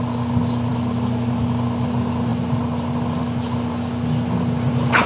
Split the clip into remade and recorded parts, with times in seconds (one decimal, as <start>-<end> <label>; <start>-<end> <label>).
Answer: 0.0-5.1 recorded